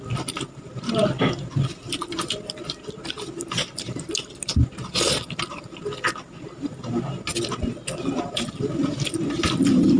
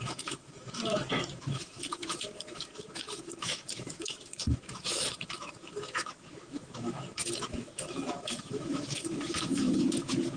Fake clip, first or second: second